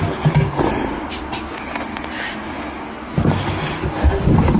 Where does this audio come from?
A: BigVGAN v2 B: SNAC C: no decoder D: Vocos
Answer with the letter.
C